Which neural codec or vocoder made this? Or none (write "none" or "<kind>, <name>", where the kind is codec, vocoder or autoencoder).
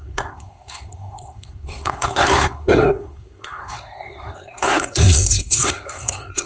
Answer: codec, SNAC